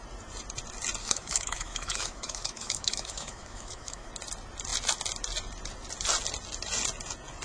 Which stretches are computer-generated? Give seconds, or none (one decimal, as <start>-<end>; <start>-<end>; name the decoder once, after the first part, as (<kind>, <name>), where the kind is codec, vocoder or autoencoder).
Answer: 1.0-4.1 (autoencoder, DAC-VAE)